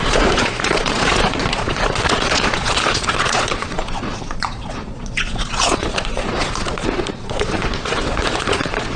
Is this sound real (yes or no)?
no